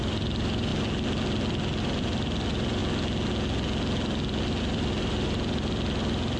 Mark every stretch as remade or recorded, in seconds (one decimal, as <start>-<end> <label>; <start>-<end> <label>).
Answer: 0.0-0.7 remade; 0.7-1.8 recorded; 1.8-2.8 remade; 2.8-4.6 recorded; 4.6-6.4 remade